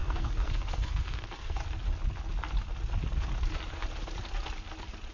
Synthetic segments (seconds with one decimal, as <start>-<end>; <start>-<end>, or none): 0.0-1.6